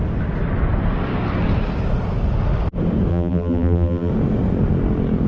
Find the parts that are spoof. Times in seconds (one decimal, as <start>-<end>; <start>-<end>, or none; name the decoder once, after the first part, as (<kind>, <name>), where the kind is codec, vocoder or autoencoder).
3.1-4.1 (vocoder, BigVGAN v2)